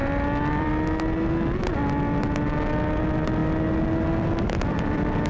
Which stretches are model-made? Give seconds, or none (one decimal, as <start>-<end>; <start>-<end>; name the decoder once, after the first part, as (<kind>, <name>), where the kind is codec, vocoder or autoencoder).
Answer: 0.0-0.7 (vocoder, BigVGAN v2); 3.4-5.3